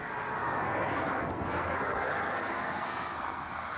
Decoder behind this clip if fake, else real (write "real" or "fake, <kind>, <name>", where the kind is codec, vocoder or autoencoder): fake, codec, SNAC